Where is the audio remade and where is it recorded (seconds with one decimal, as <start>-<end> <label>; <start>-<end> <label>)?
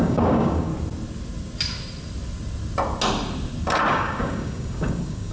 0.0-0.7 remade; 0.7-3.9 recorded; 3.9-5.3 remade